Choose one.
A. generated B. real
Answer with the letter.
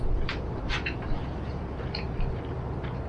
A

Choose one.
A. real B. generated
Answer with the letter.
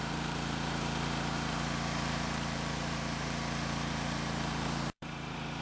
B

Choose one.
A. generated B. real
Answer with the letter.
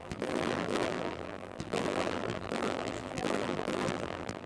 A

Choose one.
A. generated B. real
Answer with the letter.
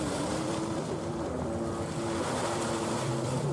A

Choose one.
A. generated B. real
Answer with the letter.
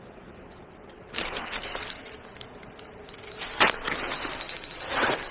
B